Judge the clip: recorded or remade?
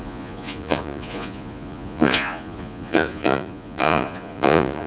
remade